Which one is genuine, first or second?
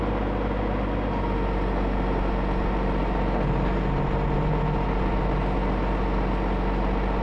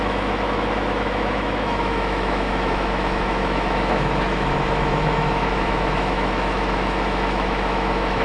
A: first